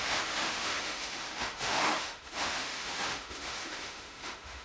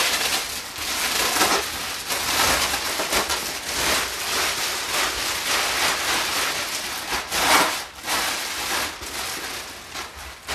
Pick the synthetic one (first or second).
first